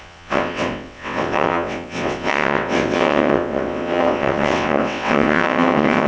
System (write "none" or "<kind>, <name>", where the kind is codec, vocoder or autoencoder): vocoder, WaveNeXt